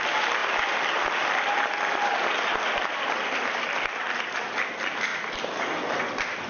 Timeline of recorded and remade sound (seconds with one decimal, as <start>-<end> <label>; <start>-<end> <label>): 0.0-0.4 recorded; 0.4-3.9 remade; 3.9-5.1 recorded; 5.1-6.5 remade